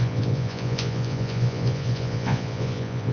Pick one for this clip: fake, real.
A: fake